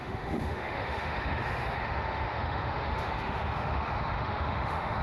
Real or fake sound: fake